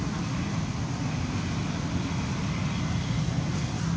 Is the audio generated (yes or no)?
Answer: no